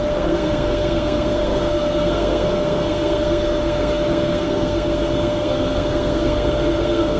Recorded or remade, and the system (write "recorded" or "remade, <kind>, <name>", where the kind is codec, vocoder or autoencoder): remade, codec, SNAC